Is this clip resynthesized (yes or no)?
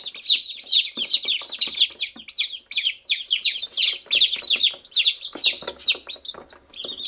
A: no